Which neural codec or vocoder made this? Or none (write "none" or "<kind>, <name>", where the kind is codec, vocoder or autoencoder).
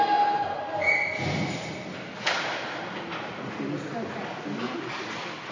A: none